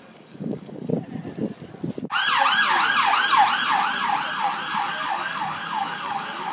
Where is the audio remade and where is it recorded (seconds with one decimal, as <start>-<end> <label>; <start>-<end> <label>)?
0.0-0.9 remade; 0.9-4.8 recorded; 4.8-6.5 remade

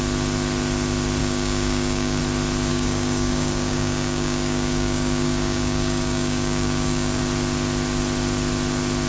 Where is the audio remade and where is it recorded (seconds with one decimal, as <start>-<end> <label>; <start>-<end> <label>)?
0.0-1.2 recorded; 1.2-2.2 remade; 2.2-2.7 recorded; 2.7-7.2 remade; 7.2-9.1 recorded

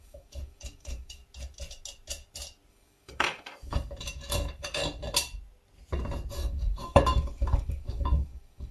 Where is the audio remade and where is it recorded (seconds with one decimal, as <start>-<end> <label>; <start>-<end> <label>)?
0.0-1.2 remade; 1.2-2.7 recorded; 2.7-4.8 remade; 4.8-6.3 recorded; 6.3-8.7 remade

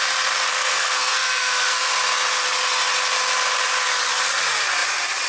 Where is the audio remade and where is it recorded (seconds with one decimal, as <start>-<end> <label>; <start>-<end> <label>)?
0.0-0.5 recorded; 0.5-1.9 remade; 1.9-5.3 recorded